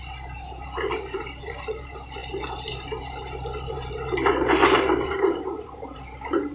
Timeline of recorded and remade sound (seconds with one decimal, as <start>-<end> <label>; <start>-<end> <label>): 0.0-6.5 remade